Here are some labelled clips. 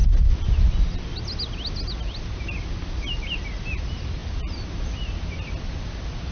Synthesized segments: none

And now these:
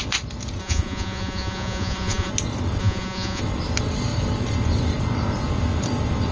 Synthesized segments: 0.6-2.3 (vocoder, Vocos); 2.8-3.4

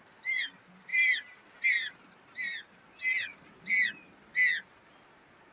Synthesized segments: 0.9-3.7 (vocoder, BigVGAN v2); 4.5-5.5

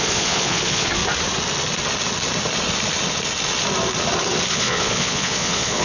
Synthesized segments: 0.0-1.0 (vocoder, Vocos); 4.5-5.8

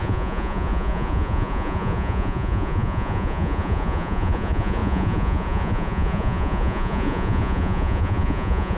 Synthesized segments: 0.0-8.8 (vocoder, Vocos)